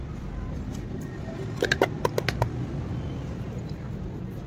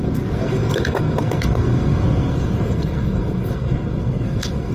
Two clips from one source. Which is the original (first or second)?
first